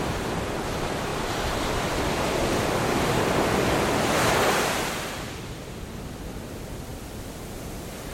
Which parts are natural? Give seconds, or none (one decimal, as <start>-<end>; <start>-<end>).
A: 0.0-8.1